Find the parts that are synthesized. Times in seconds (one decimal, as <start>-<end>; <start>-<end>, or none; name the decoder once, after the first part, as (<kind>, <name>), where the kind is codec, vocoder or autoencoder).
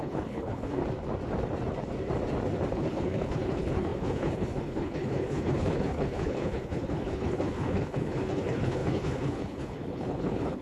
0.0-0.8 (codec, HILCodec); 2.7-10.6